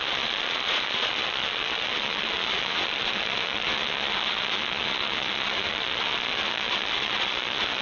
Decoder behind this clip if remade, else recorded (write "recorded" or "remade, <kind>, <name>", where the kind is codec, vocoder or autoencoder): remade, vocoder, Vocos